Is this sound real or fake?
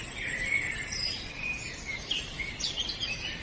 real